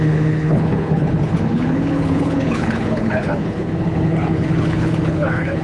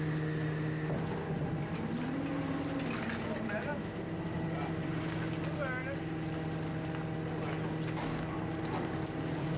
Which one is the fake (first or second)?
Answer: first